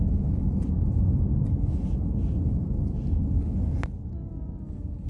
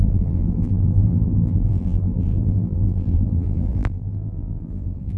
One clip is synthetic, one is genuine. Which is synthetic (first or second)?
second